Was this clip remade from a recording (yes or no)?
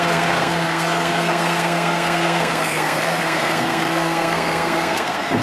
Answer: yes